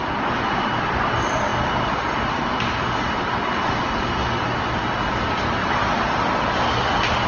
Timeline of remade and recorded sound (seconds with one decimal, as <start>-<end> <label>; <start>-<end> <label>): 0.0-7.3 recorded